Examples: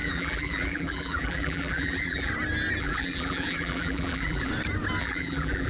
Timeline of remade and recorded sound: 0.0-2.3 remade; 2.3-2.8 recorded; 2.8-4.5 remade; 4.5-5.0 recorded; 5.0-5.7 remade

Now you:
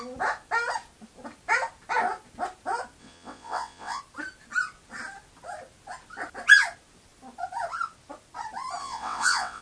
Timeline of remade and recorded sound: 0.0-3.0 recorded; 3.0-4.0 remade; 4.0-8.8 recorded; 8.8-9.6 remade